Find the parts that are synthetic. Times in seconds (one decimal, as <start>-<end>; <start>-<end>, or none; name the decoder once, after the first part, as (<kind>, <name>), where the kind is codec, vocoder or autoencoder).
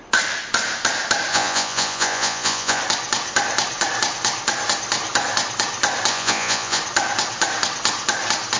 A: 1.3-2.8 (vocoder, Vocos); 6.1-6.8